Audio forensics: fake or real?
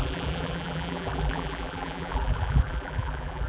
fake